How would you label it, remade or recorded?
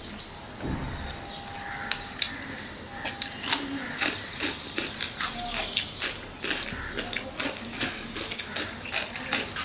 recorded